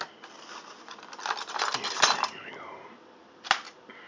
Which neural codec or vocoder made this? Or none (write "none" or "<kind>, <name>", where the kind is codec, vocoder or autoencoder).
none